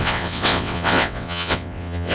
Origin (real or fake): fake